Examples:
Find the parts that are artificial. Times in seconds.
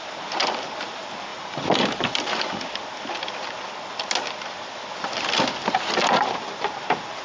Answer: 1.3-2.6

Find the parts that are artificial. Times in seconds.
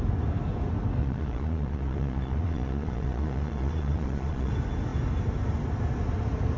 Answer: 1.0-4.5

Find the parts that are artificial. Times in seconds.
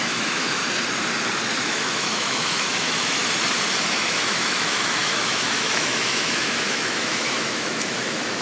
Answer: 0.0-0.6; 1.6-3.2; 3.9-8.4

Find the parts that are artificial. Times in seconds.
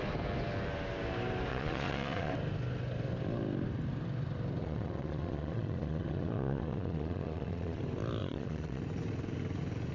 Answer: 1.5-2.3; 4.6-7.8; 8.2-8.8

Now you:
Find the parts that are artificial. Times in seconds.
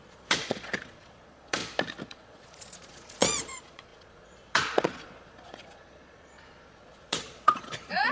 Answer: 0.0-1.6; 2.1-8.1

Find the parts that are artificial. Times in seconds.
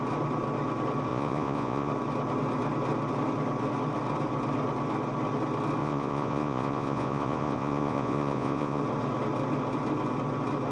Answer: 1.1-1.9; 5.8-8.8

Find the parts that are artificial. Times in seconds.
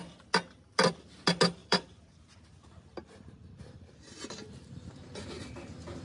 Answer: 1.6-5.2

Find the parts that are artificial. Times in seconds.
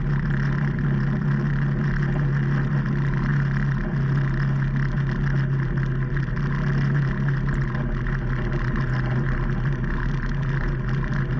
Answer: none